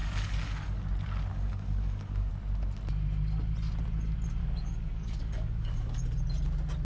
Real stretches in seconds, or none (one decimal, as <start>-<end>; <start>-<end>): 0.8-1.3; 2.3-4.4; 6.0-6.8